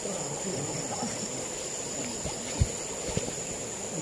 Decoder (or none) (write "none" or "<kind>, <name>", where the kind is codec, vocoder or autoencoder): none